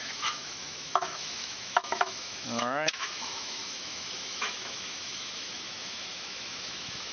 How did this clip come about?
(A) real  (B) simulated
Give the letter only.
B